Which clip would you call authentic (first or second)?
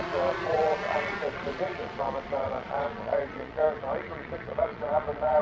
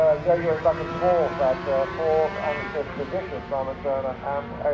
second